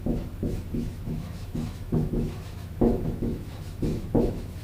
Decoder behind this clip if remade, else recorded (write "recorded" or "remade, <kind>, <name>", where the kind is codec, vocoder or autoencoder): remade, autoencoder, DAC-VAE